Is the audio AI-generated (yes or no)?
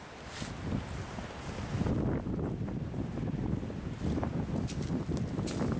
no